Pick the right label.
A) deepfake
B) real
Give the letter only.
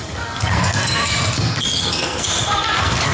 A